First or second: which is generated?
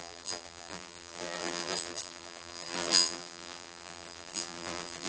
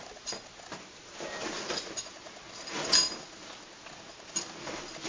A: first